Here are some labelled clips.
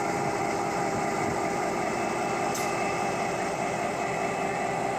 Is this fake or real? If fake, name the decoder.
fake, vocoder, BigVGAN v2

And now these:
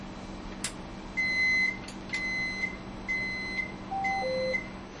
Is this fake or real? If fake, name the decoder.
real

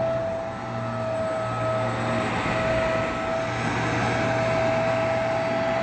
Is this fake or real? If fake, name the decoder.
real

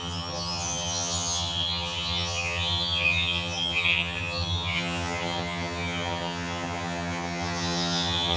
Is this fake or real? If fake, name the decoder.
fake, vocoder, HiFi-GAN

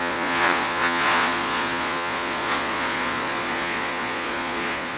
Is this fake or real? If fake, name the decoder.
fake, vocoder, Vocos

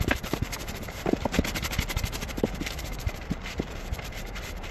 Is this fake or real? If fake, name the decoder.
fake, vocoder, BigVGAN v2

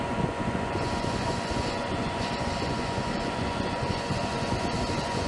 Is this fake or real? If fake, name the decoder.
fake, vocoder, Vocos